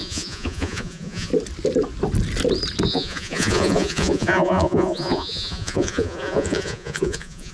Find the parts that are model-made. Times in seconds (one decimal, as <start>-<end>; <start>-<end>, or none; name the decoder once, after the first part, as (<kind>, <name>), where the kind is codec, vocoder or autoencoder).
0.0-1.3 (vocoder, Vocos); 2.9-7.5